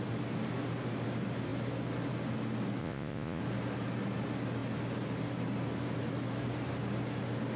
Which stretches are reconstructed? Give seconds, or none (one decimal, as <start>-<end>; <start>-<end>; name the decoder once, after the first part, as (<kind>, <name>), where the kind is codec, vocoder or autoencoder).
2.8-3.4 (vocoder, Vocos)